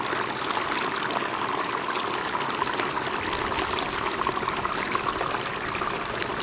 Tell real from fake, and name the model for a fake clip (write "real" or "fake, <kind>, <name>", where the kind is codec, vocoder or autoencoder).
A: real